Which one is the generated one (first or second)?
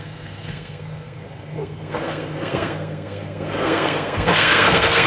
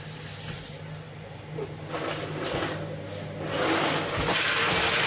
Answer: first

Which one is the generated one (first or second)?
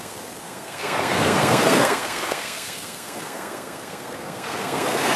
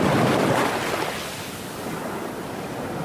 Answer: first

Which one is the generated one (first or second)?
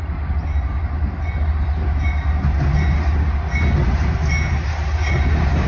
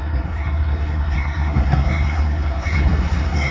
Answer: second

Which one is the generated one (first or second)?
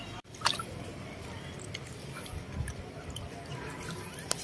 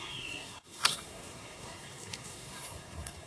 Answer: second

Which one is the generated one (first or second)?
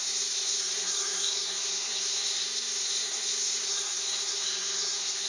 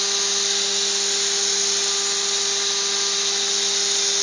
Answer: first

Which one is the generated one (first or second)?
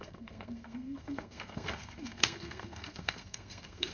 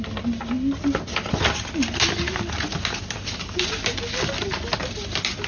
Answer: first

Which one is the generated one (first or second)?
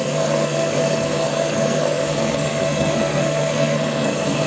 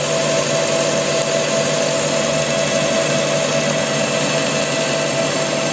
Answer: first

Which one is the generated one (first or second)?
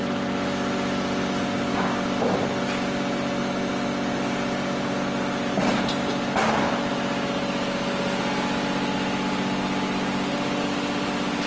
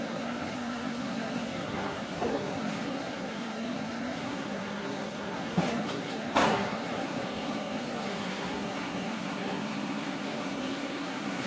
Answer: second